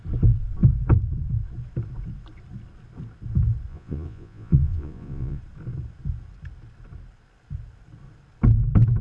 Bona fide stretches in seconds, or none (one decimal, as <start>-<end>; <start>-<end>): 0.0-3.7; 5.4-9.0